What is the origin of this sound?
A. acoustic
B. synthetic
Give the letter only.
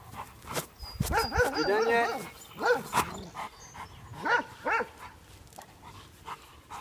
A